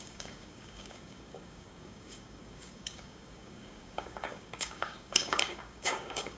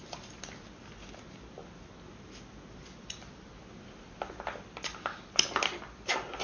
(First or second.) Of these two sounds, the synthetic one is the first